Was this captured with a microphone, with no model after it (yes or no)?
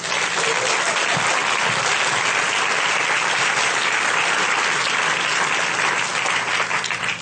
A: yes